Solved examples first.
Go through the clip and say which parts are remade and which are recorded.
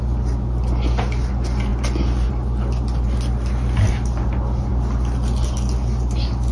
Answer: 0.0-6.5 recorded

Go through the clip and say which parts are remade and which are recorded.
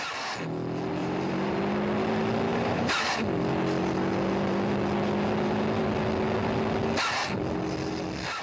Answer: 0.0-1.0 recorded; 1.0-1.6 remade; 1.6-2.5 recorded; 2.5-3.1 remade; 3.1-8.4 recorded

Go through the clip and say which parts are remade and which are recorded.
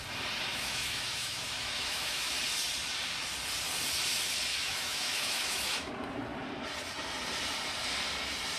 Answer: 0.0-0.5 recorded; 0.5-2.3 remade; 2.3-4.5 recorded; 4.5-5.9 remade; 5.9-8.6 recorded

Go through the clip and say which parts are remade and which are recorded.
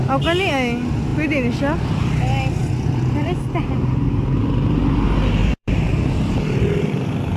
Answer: 0.0-5.4 recorded; 5.4-5.9 remade; 5.9-7.4 recorded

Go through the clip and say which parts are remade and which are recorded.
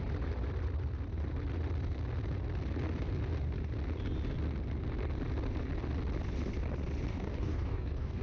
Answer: 0.0-7.1 recorded; 7.1-8.2 remade